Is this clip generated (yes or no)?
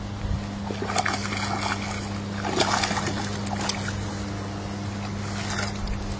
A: no